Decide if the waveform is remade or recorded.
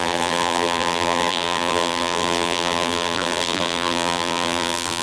remade